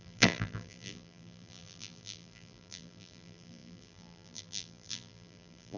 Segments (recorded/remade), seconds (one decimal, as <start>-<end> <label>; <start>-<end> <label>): 0.0-5.8 remade